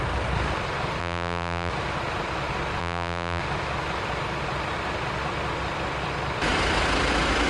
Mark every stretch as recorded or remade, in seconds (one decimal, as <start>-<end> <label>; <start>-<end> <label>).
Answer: 0.0-1.0 recorded; 1.0-1.7 remade; 1.7-2.8 recorded; 2.8-3.4 remade; 3.4-7.5 recorded